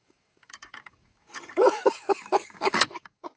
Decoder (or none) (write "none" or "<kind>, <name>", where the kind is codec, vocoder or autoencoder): codec, DAC